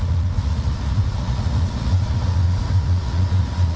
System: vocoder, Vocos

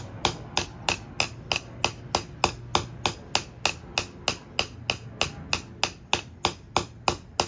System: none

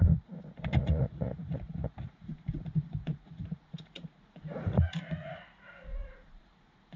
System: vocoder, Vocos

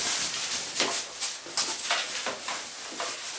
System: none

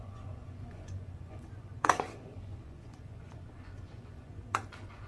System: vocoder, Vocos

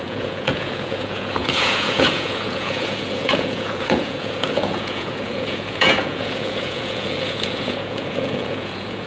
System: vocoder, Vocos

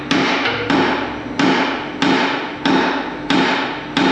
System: none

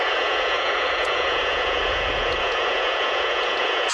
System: vocoder, Vocos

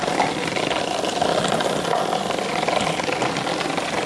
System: none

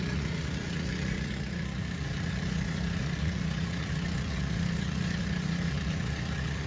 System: vocoder, Vocos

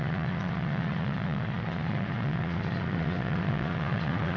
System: vocoder, Vocos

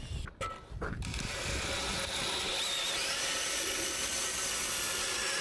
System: none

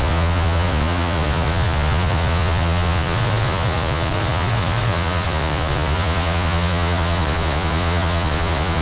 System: vocoder, Vocos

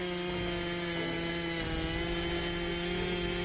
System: none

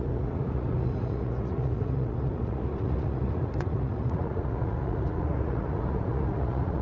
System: vocoder, Vocos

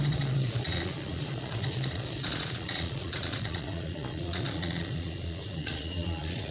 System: vocoder, Vocos